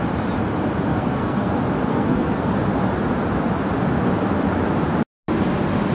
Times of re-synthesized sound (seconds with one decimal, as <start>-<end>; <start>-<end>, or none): 0.9-1.5; 1.9-2.5